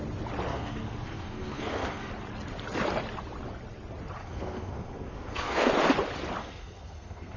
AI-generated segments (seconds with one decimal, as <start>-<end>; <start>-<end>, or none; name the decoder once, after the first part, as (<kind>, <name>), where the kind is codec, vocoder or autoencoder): 0.5-2.1 (codec, SNAC); 4.2-5.7; 6.4-7.4